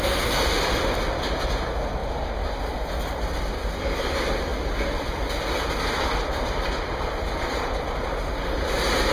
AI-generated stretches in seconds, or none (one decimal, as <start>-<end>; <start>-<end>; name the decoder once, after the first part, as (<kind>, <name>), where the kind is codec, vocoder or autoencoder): none

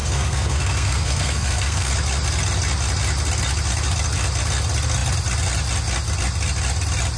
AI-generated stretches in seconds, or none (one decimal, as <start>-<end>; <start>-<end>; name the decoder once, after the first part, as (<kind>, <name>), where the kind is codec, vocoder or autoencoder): 0.0-1.9 (codec, SNAC)

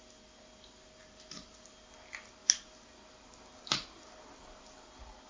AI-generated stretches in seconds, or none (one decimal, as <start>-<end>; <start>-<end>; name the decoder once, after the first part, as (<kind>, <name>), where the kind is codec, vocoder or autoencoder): none

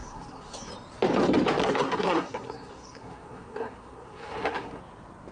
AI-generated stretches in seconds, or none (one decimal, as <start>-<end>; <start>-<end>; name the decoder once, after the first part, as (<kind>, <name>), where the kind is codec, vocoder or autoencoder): 0.0-0.7 (codec, SNAC); 1.6-4.8

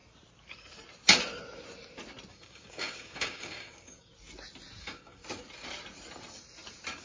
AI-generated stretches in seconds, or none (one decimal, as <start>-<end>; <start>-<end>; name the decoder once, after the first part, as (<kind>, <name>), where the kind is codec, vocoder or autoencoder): 2.3-4.1 (codec, DAC); 4.8-5.2

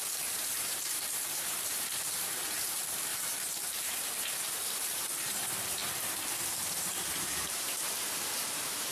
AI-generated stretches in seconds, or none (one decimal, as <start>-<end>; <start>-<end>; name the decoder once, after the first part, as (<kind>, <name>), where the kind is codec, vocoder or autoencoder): 0.0-5.8 (vocoder, BigVGAN v2); 6.3-8.9

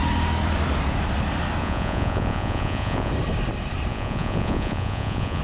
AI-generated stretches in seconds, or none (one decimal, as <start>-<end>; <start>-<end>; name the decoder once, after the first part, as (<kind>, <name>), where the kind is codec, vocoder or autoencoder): 1.6-3.1 (vocoder, Vocos); 3.9-5.4